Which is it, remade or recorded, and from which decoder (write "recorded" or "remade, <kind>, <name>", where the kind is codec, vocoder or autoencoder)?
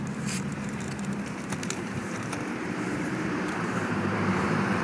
remade, vocoder, BigVGAN v2